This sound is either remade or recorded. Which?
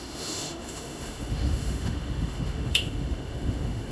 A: remade